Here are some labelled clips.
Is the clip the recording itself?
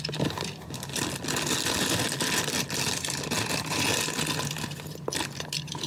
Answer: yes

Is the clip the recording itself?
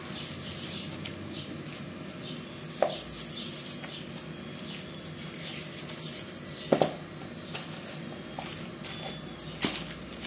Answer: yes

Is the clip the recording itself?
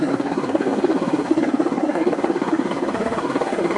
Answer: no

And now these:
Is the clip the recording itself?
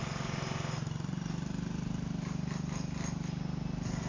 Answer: yes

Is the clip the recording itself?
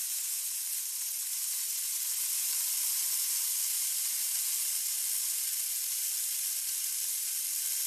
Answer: yes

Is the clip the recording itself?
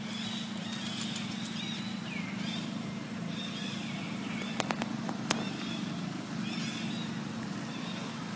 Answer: yes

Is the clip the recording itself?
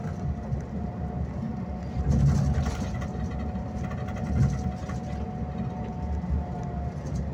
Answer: yes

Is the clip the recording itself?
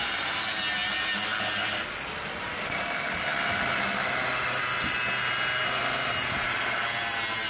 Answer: yes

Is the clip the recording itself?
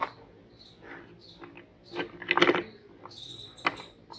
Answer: yes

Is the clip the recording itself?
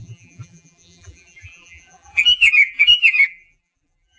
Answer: no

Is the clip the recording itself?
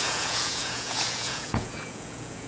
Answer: no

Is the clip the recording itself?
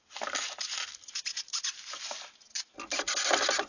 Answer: yes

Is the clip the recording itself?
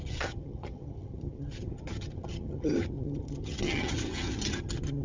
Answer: no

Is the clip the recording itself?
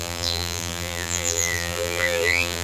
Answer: no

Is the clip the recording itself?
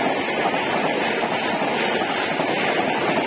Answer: yes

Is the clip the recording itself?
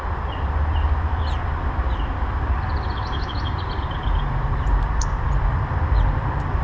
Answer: no